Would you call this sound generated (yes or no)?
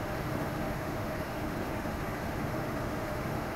yes